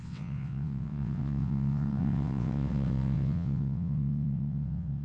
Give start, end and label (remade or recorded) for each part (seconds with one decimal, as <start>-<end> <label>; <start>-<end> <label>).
0.0-5.0 remade